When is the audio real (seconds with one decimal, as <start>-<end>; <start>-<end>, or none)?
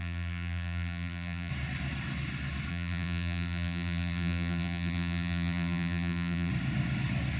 1.5-2.7; 6.5-7.4